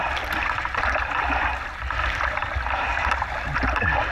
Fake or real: real